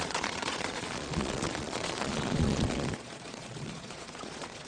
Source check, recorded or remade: remade